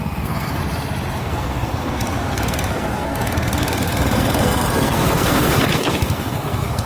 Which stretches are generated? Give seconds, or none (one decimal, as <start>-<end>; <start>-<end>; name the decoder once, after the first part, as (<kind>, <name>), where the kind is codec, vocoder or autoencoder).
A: 0.0-0.6 (codec, SNAC); 1.2-6.9